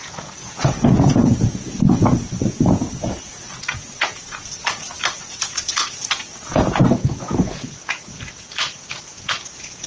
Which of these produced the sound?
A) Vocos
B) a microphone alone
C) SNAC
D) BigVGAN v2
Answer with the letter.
A